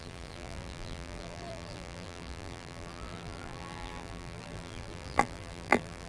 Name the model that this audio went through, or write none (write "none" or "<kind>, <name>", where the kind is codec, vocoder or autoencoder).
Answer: vocoder, BigVGAN v2